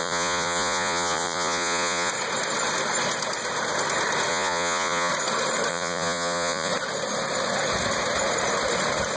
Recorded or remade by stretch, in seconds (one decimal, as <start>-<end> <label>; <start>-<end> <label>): 0.0-2.1 remade; 2.1-4.3 recorded; 4.3-5.1 remade; 5.1-5.7 recorded; 5.7-6.7 remade; 6.7-9.2 recorded